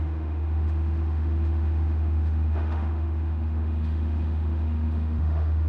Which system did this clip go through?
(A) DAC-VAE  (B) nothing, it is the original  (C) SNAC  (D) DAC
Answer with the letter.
A